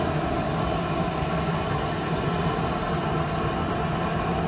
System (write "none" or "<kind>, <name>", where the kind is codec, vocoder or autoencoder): none